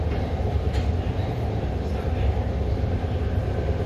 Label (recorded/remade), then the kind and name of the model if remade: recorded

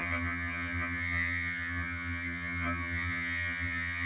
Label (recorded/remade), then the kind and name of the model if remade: remade, vocoder, HiFi-GAN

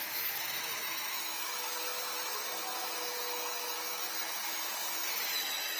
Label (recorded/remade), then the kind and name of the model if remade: remade, autoencoder, DAC-VAE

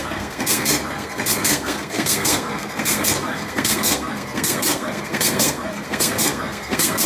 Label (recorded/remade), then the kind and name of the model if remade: remade, codec, SNAC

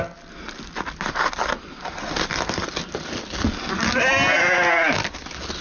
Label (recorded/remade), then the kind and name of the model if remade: recorded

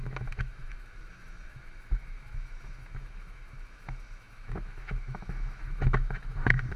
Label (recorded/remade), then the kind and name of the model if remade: remade, autoencoder, DAC-VAE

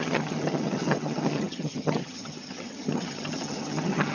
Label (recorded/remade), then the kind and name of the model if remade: remade, vocoder, HiFi-GAN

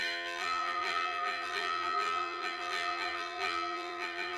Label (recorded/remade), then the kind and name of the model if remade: remade, vocoder, BigVGAN v2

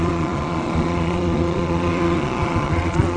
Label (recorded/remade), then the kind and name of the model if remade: remade, vocoder, Vocos